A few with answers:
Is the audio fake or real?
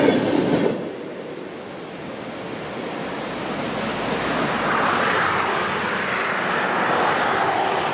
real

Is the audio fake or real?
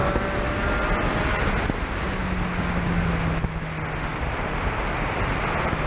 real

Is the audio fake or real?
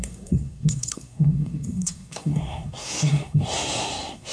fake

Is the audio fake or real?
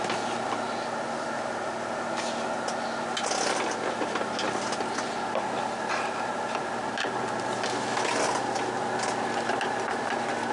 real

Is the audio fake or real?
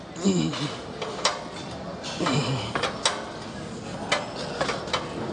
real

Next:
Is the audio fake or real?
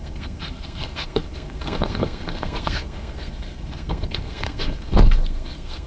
fake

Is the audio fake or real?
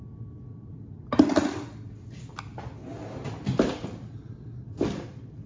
real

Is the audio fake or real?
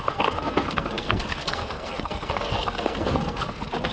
fake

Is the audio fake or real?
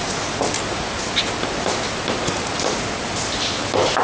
real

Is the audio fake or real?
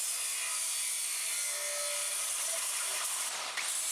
real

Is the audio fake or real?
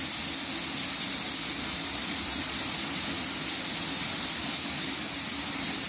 real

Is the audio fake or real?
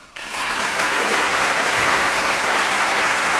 fake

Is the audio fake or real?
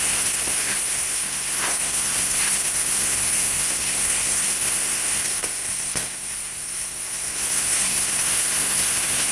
fake